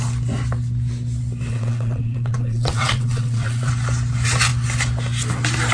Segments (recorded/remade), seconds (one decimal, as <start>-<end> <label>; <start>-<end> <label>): 0.0-1.5 recorded; 1.5-3.7 remade; 3.7-5.7 recorded